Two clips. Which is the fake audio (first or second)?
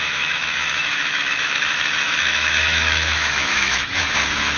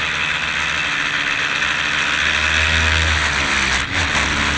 first